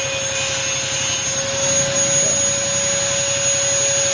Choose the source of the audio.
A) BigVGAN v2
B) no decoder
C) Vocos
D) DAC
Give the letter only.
B